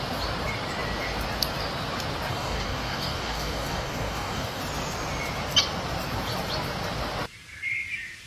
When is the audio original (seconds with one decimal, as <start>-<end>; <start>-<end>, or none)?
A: 0.0-2.3; 4.6-8.3